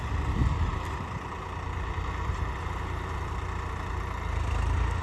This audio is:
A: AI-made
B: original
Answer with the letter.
B